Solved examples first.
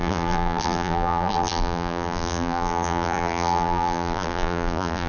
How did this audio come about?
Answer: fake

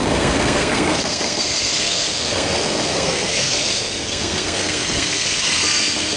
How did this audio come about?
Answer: fake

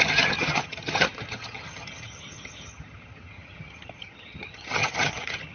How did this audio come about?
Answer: fake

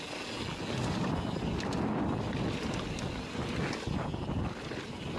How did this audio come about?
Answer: real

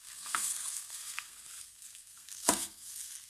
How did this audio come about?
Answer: fake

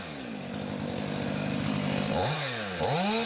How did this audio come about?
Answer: real